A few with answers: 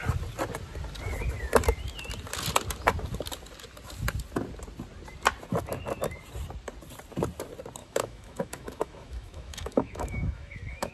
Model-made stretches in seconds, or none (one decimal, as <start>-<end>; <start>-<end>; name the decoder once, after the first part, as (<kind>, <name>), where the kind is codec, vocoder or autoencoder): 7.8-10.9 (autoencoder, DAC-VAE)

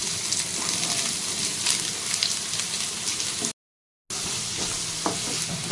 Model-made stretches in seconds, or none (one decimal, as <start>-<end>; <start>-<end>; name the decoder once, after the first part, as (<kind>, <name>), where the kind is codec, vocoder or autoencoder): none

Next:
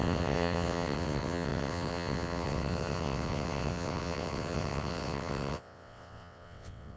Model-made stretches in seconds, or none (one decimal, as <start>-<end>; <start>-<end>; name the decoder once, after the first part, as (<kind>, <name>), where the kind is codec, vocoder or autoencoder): 0.0-7.0 (vocoder, WaveNeXt)